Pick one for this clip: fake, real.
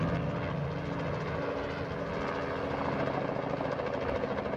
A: real